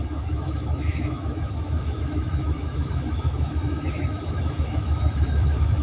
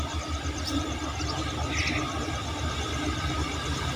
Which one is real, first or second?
second